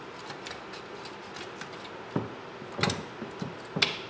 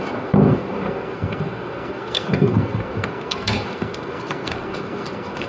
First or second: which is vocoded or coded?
second